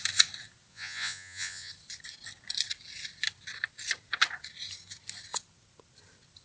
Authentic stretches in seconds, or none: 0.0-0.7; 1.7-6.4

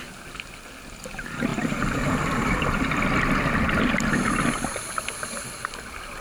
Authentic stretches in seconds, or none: 0.0-6.2